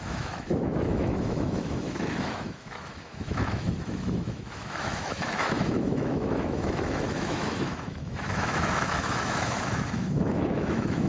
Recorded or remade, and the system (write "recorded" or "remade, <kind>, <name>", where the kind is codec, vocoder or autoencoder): remade, autoencoder, DAC-VAE